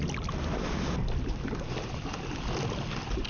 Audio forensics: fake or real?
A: real